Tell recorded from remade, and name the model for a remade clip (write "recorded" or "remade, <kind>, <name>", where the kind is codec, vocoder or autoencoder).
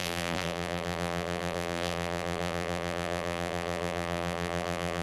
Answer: remade, vocoder, BigVGAN v2